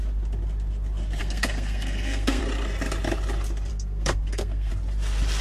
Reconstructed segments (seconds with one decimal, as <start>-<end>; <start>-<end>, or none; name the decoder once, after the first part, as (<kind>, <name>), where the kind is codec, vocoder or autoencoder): 1.2-2.4 (codec, SNAC); 3.7-4.7